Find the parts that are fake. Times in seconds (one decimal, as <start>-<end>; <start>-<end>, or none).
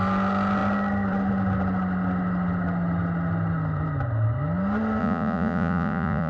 5.0-6.3